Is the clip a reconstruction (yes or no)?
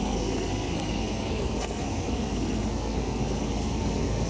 yes